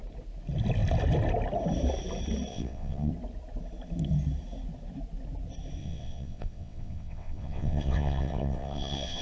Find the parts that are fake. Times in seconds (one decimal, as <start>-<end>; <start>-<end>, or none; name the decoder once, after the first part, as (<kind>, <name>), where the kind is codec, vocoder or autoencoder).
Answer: 2.5-3.1 (vocoder, WaveNeXt); 5.8-9.2